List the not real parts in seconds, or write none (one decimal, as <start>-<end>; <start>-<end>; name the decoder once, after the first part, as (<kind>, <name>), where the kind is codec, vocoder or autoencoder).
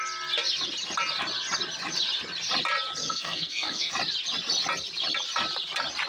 3.0-3.9 (codec, SNAC)